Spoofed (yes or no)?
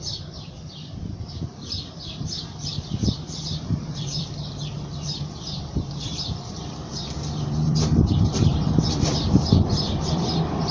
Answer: yes